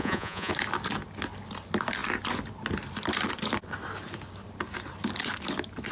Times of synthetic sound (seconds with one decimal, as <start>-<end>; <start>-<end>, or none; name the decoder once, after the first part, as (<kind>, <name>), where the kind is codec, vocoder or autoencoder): 0.0-0.5 (vocoder, Vocos)